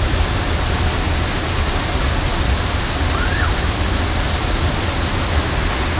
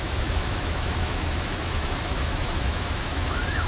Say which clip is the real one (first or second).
first